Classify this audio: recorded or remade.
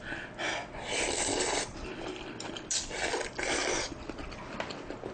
recorded